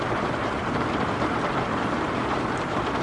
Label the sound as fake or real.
fake